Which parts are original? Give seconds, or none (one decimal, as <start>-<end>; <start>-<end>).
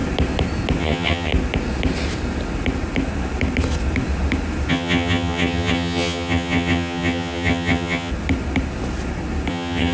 0.0-0.8; 1.3-4.7; 8.1-9.5